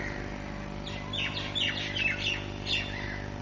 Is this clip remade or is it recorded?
recorded